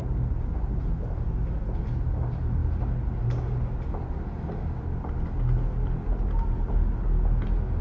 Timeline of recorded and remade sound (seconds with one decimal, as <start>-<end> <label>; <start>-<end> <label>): 0.0-7.8 recorded